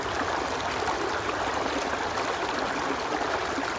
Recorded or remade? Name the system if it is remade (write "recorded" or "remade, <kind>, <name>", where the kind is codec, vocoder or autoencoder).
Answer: recorded